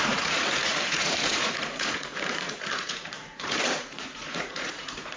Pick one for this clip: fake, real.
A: fake